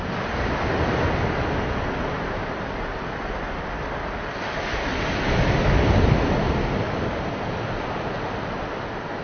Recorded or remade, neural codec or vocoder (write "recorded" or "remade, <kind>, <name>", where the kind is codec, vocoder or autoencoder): recorded